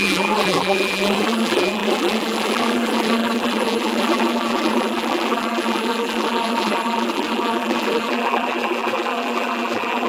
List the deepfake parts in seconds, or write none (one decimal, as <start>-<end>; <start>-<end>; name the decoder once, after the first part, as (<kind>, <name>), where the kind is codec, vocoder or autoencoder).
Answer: 0.0-10.1 (vocoder, BigVGAN v2)